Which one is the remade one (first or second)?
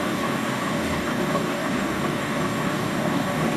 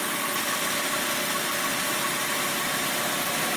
first